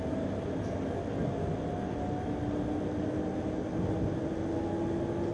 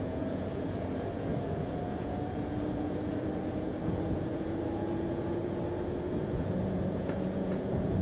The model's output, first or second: second